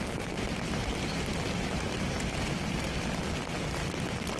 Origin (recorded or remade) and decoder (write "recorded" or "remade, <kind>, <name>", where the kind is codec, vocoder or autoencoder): recorded